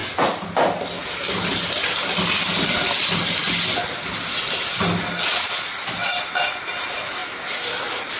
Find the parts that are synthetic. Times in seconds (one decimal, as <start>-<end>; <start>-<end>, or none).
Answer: none